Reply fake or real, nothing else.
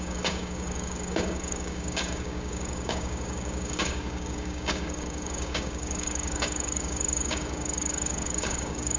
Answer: fake